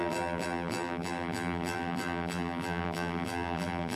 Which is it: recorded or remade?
remade